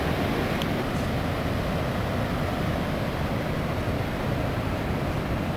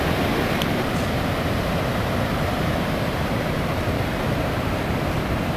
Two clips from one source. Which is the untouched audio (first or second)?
first